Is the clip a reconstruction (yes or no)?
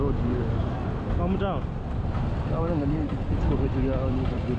no